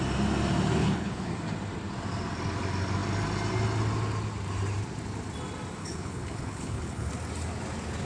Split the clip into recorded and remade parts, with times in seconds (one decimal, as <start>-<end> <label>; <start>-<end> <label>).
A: 0.0-0.8 recorded; 0.8-1.3 remade; 1.3-5.8 recorded; 5.8-7.1 remade; 7.1-8.1 recorded